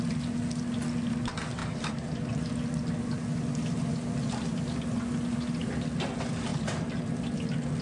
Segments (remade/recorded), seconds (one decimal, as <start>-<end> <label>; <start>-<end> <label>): 0.0-1.6 recorded; 1.6-2.1 remade; 2.1-6.5 recorded; 6.5-7.2 remade; 7.2-7.8 recorded